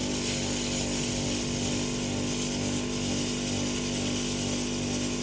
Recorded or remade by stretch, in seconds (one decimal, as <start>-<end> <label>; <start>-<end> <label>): 0.0-5.2 recorded